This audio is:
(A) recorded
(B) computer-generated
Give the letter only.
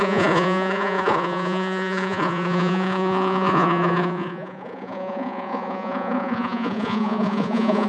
B